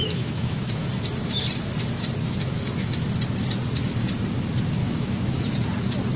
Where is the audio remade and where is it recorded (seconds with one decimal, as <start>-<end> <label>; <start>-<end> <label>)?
0.0-0.9 remade; 0.9-2.2 recorded; 2.2-2.9 remade; 2.9-4.8 recorded; 4.8-5.4 remade; 5.4-6.2 recorded